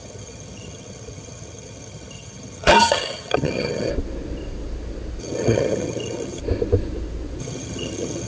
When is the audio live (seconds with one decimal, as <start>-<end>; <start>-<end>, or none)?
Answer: 3.9-5.2; 6.4-7.4